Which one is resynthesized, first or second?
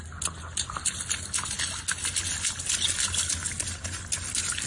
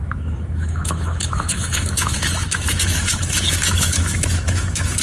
second